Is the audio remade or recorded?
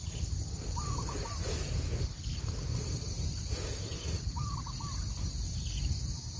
recorded